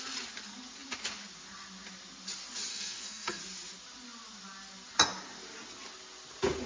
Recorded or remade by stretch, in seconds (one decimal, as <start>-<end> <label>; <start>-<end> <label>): 0.0-2.7 recorded; 2.7-3.4 remade; 3.4-6.7 recorded